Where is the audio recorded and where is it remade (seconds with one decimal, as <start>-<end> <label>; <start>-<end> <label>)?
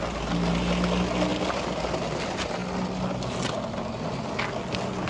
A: 0.0-5.1 recorded